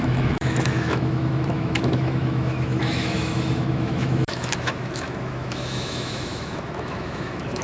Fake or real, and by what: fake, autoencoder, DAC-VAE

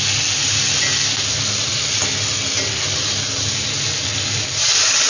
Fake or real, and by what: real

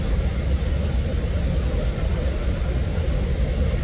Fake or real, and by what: real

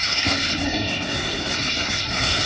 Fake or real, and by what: fake, codec, SNAC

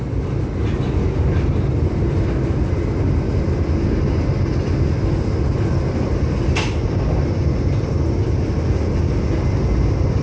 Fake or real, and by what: real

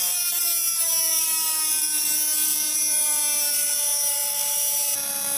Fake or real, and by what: real